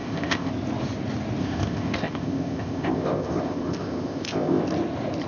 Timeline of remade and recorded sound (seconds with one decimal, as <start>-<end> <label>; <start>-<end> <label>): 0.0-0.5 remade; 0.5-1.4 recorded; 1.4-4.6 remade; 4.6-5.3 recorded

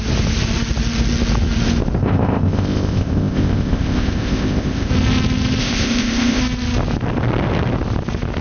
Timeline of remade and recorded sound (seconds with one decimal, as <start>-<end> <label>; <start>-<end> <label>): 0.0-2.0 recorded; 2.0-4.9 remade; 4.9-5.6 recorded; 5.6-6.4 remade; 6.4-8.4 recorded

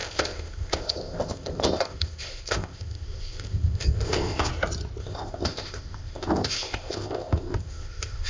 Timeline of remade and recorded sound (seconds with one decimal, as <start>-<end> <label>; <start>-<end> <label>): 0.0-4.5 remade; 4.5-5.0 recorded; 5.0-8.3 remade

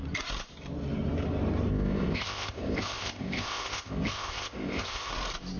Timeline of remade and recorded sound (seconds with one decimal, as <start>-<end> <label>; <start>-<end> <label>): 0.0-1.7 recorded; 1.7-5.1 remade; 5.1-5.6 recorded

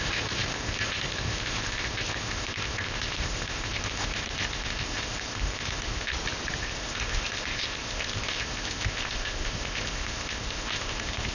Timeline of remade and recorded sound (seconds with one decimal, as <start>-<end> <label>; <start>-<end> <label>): 0.0-6.1 remade; 6.1-6.6 recorded; 6.6-11.3 remade

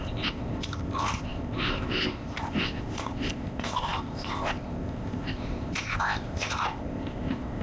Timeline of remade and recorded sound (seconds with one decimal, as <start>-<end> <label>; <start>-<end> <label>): 0.0-7.6 remade

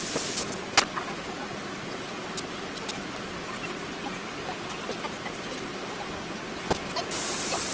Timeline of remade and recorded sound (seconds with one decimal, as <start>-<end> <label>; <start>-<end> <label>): 0.0-7.7 recorded

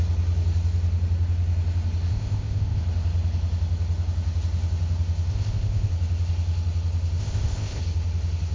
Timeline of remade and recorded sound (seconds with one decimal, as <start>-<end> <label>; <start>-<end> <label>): 0.0-2.1 recorded; 2.1-2.8 remade; 2.8-5.3 recorded; 5.3-5.9 remade; 5.9-7.2 recorded; 7.2-7.8 remade; 7.8-8.5 recorded